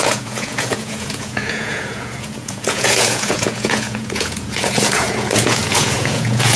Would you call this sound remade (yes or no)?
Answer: yes